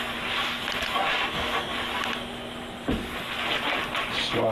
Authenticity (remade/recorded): recorded